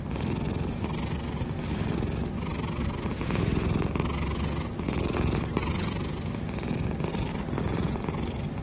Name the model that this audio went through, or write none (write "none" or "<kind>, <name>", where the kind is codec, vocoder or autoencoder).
none